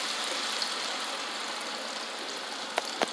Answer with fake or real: real